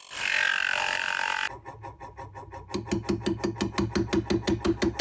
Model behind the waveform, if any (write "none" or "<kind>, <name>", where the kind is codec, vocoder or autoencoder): none